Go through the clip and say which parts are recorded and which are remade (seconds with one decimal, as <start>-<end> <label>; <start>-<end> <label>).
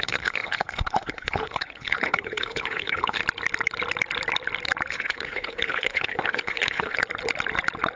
0.0-3.2 remade; 3.2-4.9 recorded; 4.9-7.0 remade; 7.0-8.0 recorded